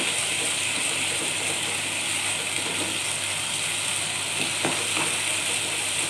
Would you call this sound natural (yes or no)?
yes